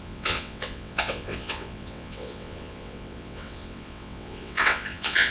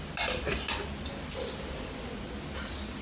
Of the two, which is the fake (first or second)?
first